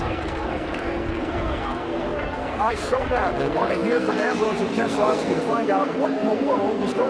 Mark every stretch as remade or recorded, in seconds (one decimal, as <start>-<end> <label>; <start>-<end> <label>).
0.0-7.1 remade